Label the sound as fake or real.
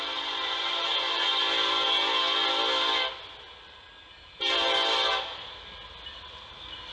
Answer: real